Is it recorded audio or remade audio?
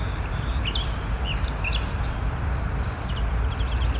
recorded